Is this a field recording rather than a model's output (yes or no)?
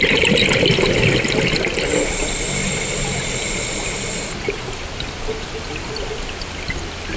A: yes